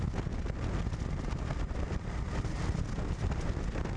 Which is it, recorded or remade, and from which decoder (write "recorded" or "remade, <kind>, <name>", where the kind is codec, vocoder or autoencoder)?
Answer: recorded